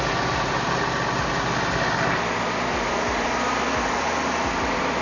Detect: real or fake real